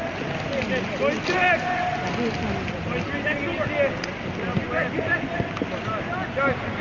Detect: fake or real real